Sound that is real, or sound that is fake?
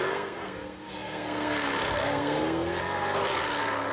fake